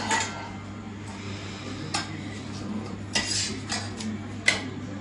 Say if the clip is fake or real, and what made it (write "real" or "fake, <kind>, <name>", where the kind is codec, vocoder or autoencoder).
real